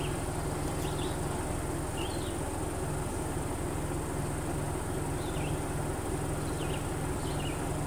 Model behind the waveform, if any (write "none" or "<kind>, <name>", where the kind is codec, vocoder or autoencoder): none